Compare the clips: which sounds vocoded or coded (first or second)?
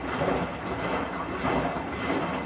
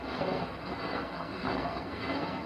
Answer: second